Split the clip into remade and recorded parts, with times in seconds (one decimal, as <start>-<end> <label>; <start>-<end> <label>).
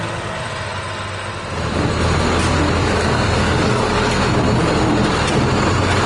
0.0-2.8 recorded; 2.8-4.2 remade; 4.2-6.1 recorded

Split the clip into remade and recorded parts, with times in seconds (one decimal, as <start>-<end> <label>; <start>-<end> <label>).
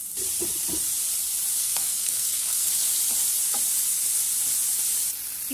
0.0-1.6 recorded; 1.6-2.7 remade; 2.7-5.5 recorded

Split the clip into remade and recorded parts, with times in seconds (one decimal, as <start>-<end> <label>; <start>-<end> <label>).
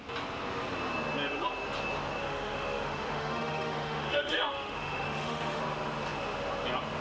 0.0-2.2 recorded; 2.2-5.6 remade; 5.6-7.0 recorded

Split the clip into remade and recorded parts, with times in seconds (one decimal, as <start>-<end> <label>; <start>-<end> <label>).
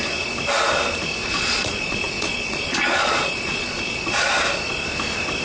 0.0-1.2 recorded; 1.2-4.3 remade; 4.3-5.4 recorded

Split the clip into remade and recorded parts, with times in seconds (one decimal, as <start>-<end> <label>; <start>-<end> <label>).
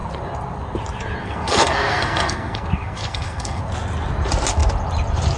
0.0-1.2 recorded; 1.2-3.6 remade; 3.6-5.4 recorded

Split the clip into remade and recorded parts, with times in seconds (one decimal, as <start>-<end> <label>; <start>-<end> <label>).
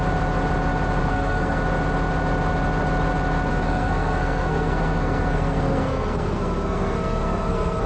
0.0-1.0 recorded; 1.0-1.6 remade; 1.6-3.5 recorded; 3.5-7.9 remade